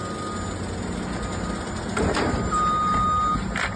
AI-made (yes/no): no